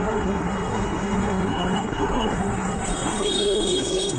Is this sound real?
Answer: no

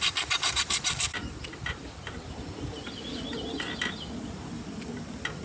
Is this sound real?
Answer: yes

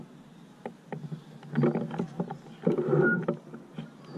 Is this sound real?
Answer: yes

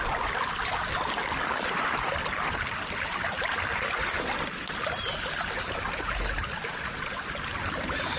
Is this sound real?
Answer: yes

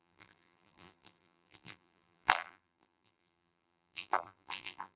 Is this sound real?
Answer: no